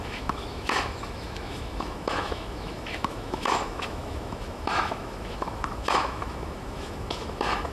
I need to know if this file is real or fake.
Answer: fake